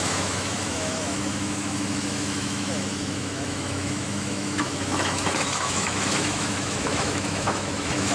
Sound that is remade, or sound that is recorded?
remade